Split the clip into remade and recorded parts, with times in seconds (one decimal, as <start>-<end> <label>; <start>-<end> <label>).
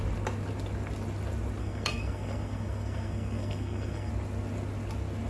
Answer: 0.0-1.6 recorded; 1.6-4.1 remade; 4.1-5.3 recorded